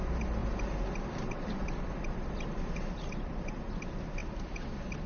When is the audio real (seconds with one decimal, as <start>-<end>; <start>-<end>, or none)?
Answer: 0.0-0.4; 3.5-4.2